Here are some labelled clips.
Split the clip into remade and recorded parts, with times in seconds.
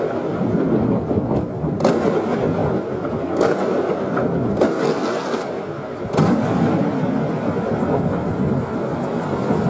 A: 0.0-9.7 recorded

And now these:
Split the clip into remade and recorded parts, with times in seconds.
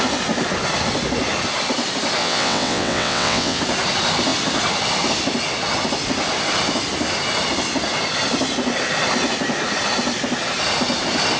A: 0.0-2.2 recorded; 2.2-3.6 remade; 3.6-11.4 recorded